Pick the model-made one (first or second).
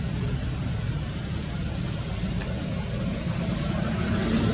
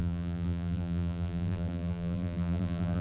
second